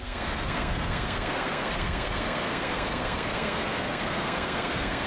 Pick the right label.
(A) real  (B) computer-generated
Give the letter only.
B